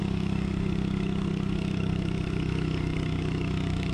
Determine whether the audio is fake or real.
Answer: fake